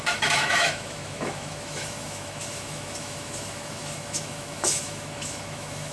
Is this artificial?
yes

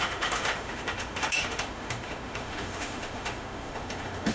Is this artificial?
yes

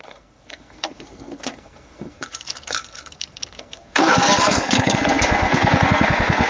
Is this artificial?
yes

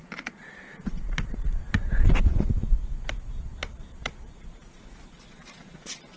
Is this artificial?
yes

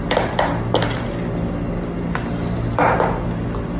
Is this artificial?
no